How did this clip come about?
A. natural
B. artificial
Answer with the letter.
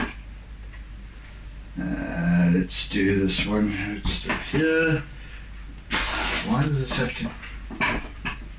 A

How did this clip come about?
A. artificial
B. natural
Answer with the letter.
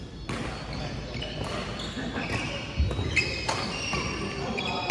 B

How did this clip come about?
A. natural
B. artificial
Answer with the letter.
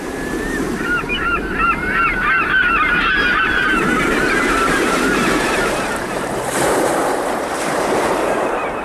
B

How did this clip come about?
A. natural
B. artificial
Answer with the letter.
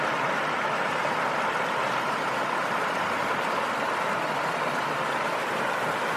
A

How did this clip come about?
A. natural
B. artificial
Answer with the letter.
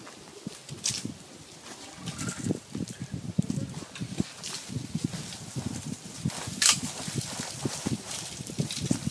A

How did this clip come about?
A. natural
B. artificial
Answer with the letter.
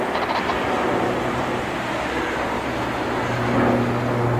A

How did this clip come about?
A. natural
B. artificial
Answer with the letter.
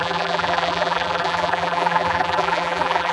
B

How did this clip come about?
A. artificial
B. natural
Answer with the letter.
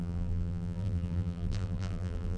A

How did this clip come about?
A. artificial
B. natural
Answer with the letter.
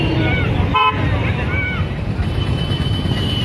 A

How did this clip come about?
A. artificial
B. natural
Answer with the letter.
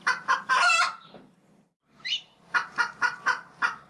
A